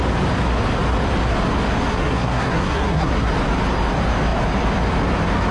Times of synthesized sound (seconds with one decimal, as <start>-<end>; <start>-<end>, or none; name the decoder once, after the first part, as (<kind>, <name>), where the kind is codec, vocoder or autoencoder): 1.9-3.3 (codec, SNAC)